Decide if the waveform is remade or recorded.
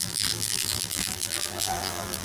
remade